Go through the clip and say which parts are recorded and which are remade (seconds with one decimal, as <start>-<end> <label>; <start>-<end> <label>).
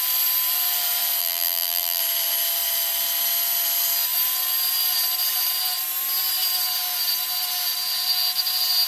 0.0-1.2 recorded; 1.2-2.0 remade; 2.0-8.9 recorded